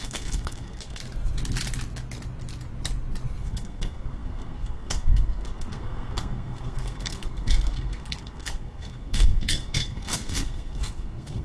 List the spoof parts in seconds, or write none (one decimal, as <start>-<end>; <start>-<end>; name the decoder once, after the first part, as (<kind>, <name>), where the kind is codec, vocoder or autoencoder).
0.0-1.0 (codec, SNAC); 3.4-11.4

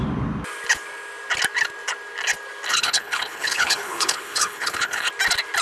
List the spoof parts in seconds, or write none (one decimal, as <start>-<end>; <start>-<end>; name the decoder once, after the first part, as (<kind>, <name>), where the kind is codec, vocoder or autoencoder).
2.7-5.1 (codec, HILCodec)

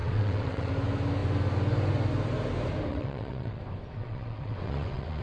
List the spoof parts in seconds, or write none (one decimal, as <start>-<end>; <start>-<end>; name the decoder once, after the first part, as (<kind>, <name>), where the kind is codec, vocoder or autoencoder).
0.0-0.7 (vocoder, WaveNeXt); 2.9-3.6; 4.0-5.2

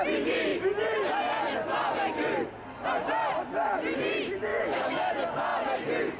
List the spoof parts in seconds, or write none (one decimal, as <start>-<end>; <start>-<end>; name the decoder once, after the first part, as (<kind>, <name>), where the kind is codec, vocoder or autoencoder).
4.5-5.1 (autoencoder, DAC-VAE)